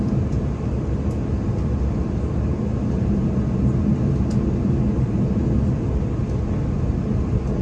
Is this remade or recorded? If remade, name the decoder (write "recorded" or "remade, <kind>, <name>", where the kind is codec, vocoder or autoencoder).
recorded